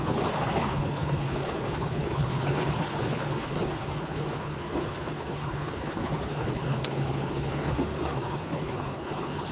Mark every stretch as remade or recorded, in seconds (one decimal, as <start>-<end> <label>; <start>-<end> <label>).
0.0-9.5 remade